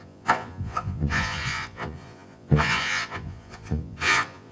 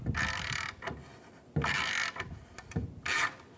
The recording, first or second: second